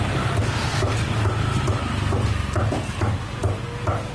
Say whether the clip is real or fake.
real